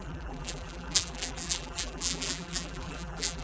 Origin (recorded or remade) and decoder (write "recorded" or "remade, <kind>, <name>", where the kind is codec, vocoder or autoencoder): remade, vocoder, BigVGAN v2